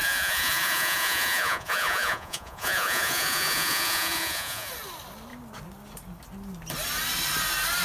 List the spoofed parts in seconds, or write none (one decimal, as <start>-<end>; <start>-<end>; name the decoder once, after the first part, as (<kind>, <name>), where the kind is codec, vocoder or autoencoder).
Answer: 0.0-4.7 (vocoder, Vocos)